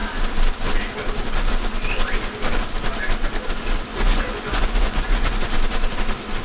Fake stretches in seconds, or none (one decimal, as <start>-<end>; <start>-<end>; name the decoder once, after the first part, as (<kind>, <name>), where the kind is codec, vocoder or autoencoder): 3.9-5.4 (vocoder, Vocos)